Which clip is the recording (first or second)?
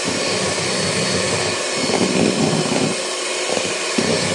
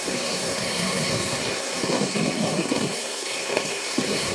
first